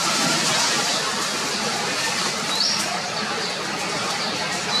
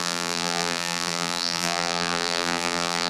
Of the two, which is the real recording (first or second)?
first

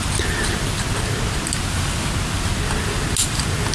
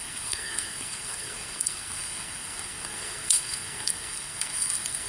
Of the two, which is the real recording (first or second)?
first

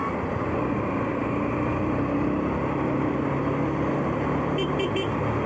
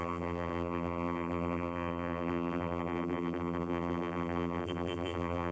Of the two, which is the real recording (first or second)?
first